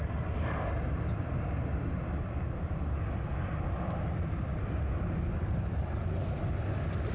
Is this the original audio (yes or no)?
yes